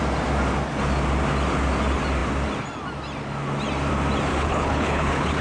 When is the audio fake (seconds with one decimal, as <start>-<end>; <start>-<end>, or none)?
4.3-5.4